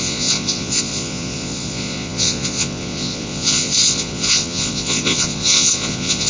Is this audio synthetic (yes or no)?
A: yes